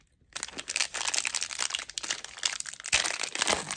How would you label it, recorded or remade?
recorded